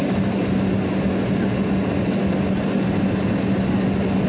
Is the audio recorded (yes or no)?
yes